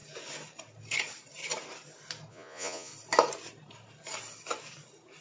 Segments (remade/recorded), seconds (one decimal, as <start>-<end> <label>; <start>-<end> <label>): 0.0-2.3 recorded; 2.3-2.9 remade; 2.9-5.2 recorded